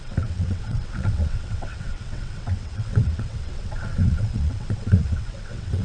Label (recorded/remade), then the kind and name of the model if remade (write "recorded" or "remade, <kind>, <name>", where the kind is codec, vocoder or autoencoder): remade, vocoder, WaveNeXt